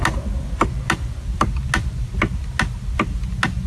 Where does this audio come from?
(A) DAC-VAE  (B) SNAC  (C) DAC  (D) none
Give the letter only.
D